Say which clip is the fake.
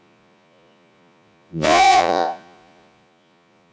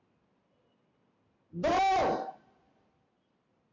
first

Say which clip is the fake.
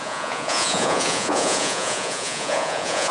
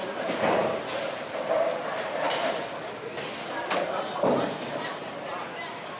first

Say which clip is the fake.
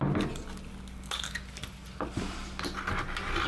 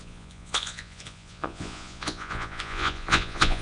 second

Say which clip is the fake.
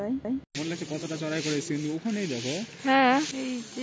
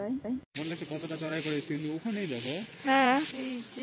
second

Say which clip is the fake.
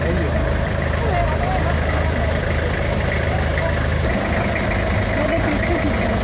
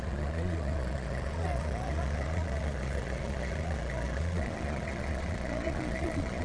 second